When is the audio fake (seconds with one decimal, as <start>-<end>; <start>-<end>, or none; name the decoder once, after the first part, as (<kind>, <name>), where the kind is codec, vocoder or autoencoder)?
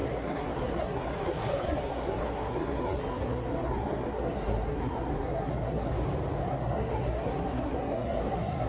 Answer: 0.0-5.9 (codec, SNAC); 6.5-8.7